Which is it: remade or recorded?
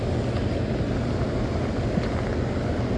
recorded